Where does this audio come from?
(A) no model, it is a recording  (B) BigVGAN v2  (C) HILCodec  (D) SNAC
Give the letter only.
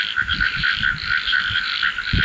B